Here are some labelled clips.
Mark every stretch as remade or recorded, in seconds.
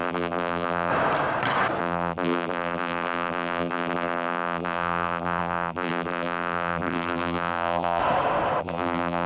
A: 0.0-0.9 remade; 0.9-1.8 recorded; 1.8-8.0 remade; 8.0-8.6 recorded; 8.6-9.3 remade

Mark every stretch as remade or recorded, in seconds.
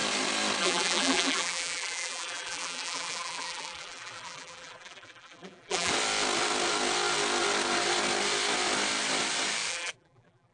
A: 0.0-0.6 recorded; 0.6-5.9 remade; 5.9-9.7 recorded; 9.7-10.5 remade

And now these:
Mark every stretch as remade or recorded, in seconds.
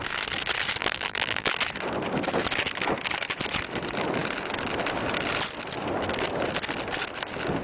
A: 0.0-0.8 recorded; 0.8-1.5 remade; 1.5-7.6 recorded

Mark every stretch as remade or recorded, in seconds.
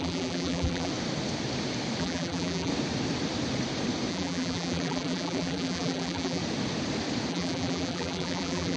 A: 0.0-0.9 remade; 0.9-2.0 recorded; 2.0-2.7 remade; 2.7-4.1 recorded; 4.1-6.4 remade; 6.4-7.3 recorded; 7.3-8.8 remade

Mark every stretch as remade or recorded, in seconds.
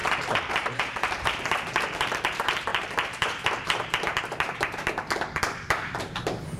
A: 0.0-0.5 recorded; 0.5-6.6 remade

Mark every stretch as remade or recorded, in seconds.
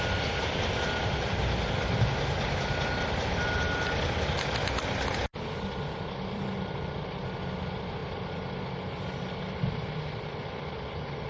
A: 0.0-5.3 recorded; 5.3-7.2 remade; 7.2-11.3 recorded